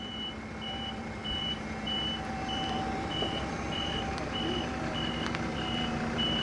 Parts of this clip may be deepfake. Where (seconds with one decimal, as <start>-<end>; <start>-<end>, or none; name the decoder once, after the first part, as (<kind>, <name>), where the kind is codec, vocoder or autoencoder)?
0.0-6.4 (vocoder, BigVGAN v2)